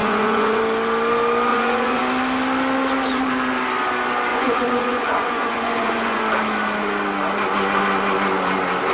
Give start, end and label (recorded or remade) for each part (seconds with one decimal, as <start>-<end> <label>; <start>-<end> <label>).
0.0-0.6 remade; 0.6-1.5 recorded; 1.5-2.0 remade; 2.0-4.3 recorded; 4.3-6.2 remade; 6.2-8.9 recorded